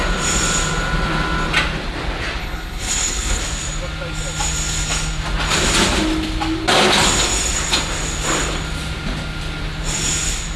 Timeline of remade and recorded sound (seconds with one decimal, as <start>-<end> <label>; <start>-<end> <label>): 0.0-2.4 recorded; 2.4-3.4 remade; 3.4-10.6 recorded